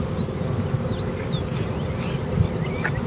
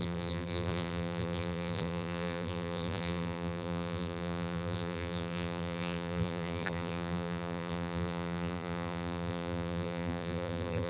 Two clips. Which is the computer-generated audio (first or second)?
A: second